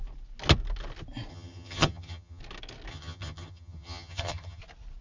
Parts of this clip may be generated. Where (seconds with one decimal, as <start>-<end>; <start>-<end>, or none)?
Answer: 1.3-2.4; 2.9-4.6